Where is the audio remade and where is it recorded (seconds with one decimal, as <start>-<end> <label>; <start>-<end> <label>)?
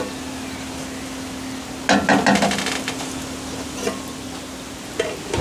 0.0-5.4 recorded